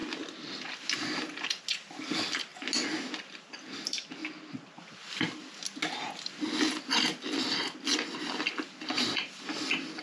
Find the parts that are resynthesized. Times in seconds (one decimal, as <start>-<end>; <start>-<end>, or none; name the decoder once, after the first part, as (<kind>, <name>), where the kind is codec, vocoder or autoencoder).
none